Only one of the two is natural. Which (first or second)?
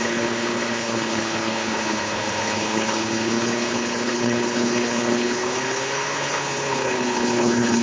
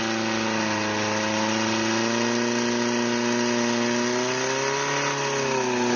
second